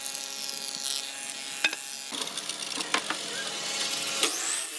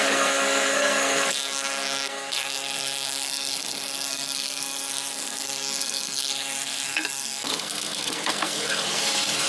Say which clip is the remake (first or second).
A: second